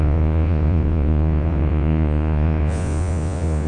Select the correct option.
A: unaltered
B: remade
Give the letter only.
B